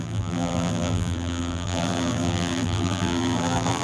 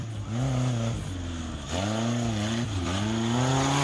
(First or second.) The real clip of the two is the second